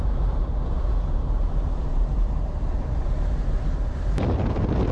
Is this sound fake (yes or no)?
yes